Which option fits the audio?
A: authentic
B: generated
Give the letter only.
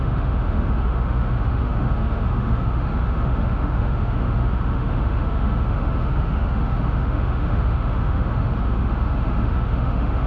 B